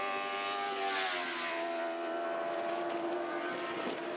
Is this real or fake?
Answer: fake